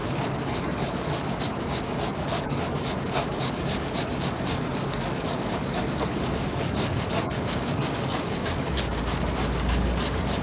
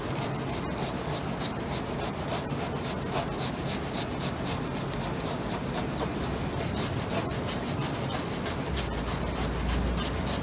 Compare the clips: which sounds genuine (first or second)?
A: second